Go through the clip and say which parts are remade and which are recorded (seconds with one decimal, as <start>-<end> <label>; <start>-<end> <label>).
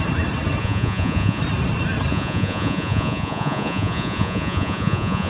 0.0-0.6 recorded; 0.6-1.4 remade; 1.4-2.1 recorded; 2.1-5.3 remade